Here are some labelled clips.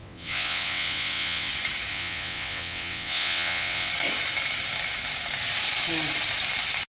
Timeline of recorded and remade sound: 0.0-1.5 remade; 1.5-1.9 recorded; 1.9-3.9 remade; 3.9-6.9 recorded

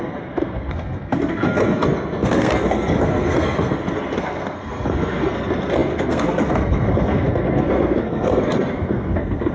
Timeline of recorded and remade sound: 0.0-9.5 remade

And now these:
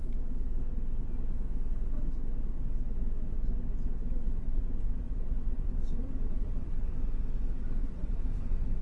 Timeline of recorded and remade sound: 0.0-4.2 recorded; 4.2-6.9 remade; 6.9-7.8 recorded; 7.8-8.8 remade

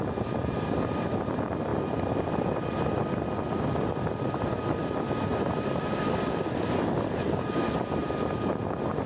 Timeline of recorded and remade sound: 0.0-5.3 recorded; 5.3-6.3 remade; 6.3-9.1 recorded

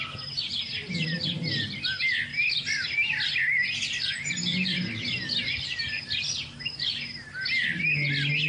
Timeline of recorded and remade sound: 0.0-0.5 recorded; 0.5-1.1 remade; 1.1-2.3 recorded; 2.3-3.3 remade; 3.3-4.5 recorded; 4.5-6.8 remade; 6.8-8.5 recorded

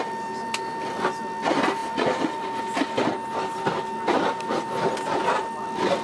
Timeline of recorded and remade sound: 0.0-6.0 recorded